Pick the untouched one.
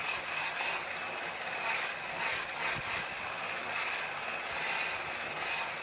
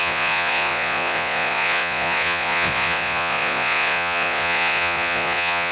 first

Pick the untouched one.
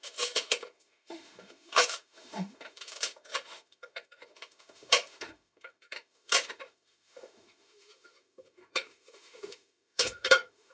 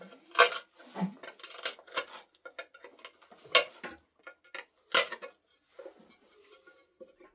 second